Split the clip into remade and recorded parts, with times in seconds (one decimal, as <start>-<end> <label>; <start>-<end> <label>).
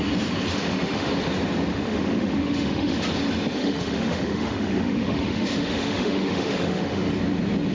0.0-0.5 recorded; 0.5-1.1 remade; 1.1-1.7 recorded; 1.7-3.0 remade; 3.0-3.6 recorded; 3.6-7.1 remade; 7.1-7.7 recorded